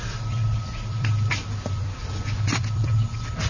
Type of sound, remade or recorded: remade